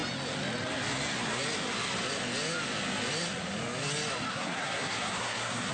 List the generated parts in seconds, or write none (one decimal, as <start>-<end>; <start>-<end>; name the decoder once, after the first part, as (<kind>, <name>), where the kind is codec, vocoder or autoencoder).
4.3-5.7 (codec, SNAC)